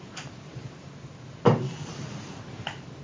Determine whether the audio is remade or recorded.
remade